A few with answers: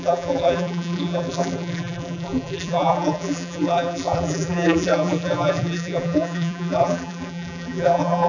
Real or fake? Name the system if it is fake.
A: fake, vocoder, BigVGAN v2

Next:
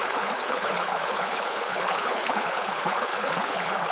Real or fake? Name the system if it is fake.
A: fake, codec, HILCodec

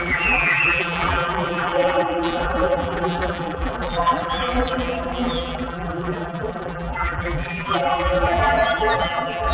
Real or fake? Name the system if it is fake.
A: fake, vocoder, BigVGAN v2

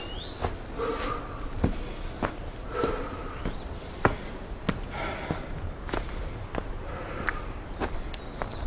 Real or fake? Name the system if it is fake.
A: real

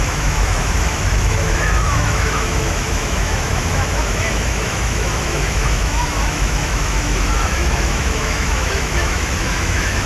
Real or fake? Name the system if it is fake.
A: fake, autoencoder, DAC-VAE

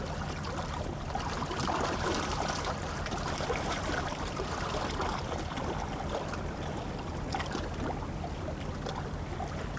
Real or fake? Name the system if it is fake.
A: fake, vocoder, BigVGAN v2